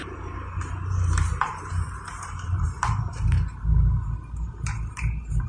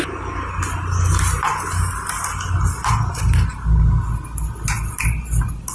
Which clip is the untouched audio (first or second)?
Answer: second